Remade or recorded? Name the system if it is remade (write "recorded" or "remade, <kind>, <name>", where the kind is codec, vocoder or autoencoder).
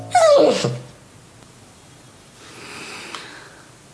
recorded